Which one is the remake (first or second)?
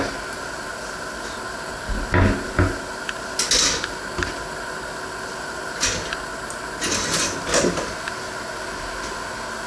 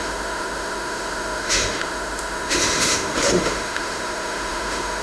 second